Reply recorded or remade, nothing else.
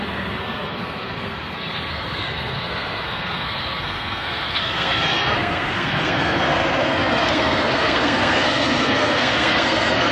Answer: remade